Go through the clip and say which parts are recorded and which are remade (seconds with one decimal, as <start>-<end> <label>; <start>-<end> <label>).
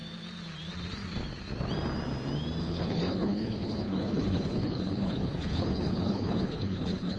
0.0-2.6 recorded; 2.6-7.2 remade